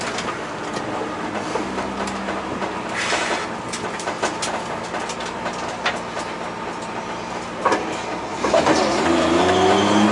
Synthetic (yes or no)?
no